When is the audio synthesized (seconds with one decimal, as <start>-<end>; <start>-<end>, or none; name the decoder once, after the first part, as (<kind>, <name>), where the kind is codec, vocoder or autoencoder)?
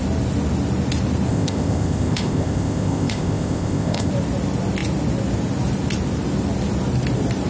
1.3-4.1 (codec, ZipCodec)